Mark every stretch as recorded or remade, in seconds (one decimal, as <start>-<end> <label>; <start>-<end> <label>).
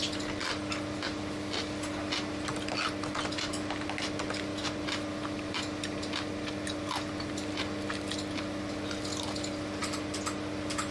0.0-10.9 recorded